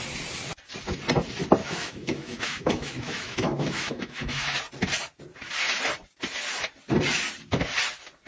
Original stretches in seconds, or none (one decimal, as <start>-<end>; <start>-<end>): 0.0-1.6; 4.6-8.3